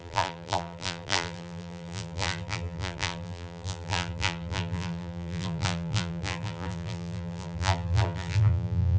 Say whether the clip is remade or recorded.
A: remade